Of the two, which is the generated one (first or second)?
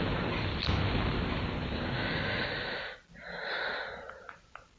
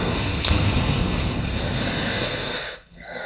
second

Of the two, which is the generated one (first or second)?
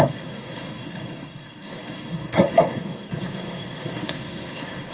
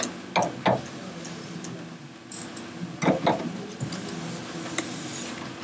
first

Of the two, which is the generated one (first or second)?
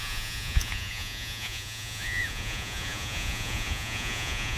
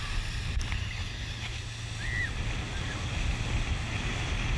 first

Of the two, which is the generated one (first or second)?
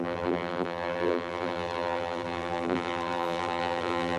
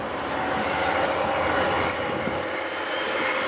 first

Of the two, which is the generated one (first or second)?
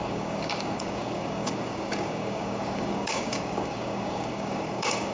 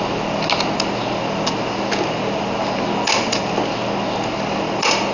first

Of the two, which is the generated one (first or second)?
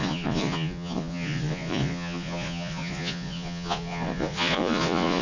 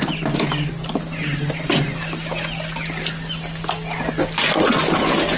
first